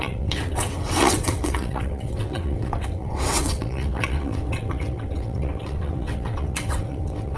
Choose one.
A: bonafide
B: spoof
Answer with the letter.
B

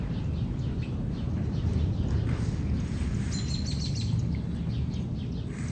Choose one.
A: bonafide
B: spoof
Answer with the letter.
A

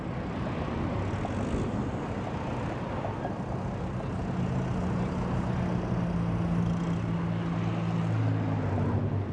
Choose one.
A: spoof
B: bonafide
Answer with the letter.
B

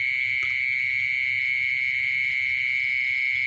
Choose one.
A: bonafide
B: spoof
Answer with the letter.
A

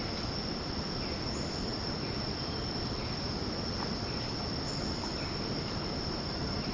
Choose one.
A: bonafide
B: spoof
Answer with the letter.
A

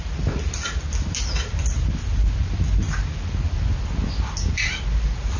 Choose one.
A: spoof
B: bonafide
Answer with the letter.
B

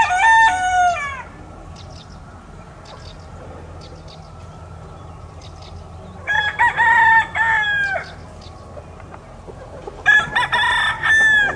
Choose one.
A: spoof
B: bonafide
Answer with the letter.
B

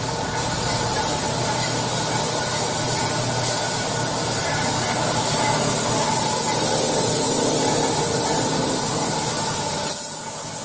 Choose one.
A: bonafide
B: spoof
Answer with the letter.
A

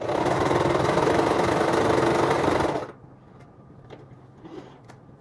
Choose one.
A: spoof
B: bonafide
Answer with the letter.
B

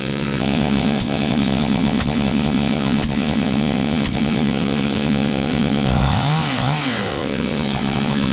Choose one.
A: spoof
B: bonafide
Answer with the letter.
A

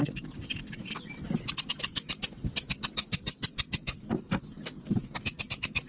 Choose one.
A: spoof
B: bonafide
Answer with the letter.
B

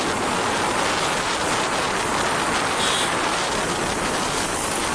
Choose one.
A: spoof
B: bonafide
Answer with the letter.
B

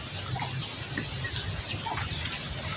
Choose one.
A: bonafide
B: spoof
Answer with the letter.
A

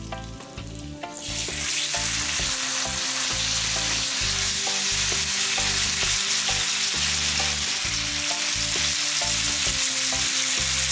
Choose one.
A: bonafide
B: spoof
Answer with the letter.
A